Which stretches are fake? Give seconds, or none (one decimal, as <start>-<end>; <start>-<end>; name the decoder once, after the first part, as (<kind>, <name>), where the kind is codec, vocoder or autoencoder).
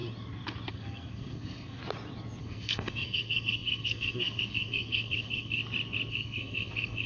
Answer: 0.7-1.8 (codec, SNAC); 2.4-5.6; 6.1-7.1